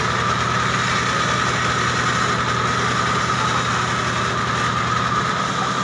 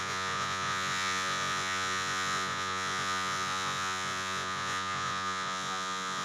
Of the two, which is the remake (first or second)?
second